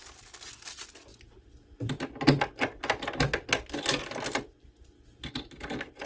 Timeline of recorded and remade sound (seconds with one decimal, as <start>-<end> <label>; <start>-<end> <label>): 0.0-6.1 recorded